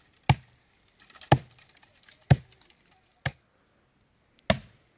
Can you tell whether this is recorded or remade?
recorded